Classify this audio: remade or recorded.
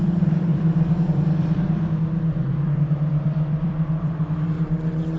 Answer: remade